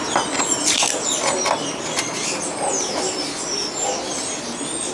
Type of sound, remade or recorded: recorded